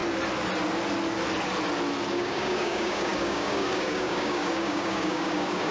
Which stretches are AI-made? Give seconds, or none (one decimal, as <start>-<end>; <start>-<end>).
2.1-5.7